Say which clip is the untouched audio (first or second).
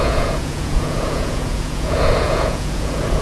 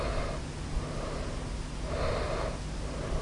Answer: second